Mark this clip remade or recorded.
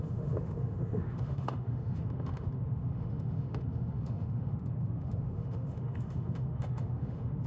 remade